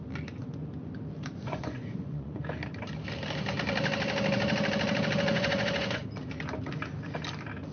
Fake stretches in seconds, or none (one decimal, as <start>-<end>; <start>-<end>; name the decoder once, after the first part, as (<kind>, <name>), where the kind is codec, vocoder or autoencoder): 1.4-2.4 (vocoder, Vocos); 5.3-6.0